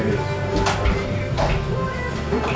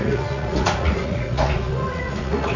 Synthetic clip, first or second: second